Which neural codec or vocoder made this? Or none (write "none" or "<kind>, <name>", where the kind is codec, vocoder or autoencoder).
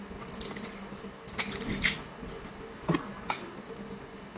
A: none